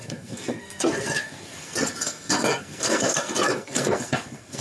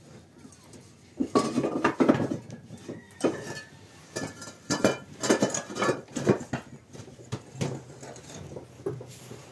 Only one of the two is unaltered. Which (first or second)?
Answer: second